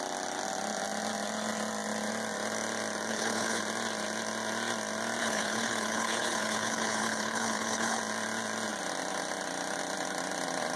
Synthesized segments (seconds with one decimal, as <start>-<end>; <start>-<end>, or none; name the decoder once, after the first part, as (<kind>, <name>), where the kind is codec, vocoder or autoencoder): 3.1-3.6 (codec, HILCodec); 5.2-8.0